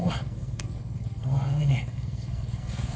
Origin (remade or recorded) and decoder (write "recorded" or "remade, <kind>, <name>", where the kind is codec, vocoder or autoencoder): remade, codec, SNAC